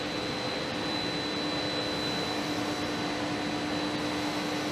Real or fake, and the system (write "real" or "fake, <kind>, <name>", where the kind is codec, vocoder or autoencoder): real